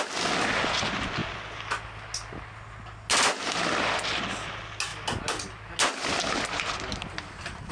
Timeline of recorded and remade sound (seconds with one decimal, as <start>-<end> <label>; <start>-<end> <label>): 0.0-7.7 recorded